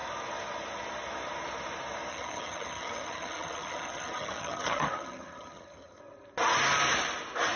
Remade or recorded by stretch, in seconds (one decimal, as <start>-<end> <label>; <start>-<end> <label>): 0.0-2.1 recorded; 2.1-6.0 remade; 6.0-7.6 recorded